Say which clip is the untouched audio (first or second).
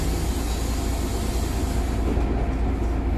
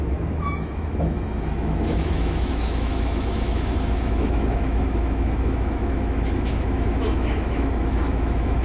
first